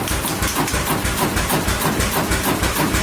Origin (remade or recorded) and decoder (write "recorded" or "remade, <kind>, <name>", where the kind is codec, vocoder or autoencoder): remade, vocoder, BigVGAN v2